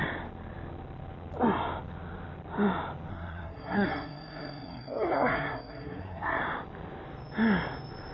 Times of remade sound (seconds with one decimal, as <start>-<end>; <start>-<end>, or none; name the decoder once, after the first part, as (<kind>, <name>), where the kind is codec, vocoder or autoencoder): 3.1-6.4 (codec, SNAC)